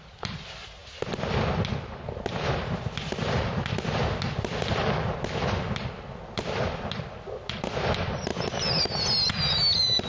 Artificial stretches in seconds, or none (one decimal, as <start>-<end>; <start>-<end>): none